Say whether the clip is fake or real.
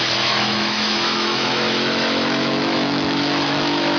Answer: fake